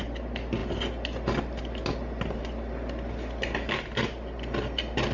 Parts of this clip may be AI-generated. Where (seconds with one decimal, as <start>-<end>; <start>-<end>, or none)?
none